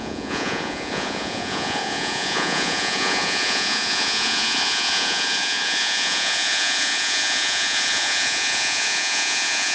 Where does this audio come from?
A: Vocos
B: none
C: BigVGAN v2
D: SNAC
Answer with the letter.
A